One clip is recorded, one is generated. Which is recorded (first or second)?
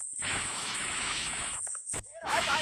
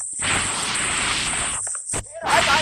second